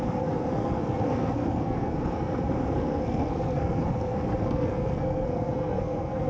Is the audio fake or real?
fake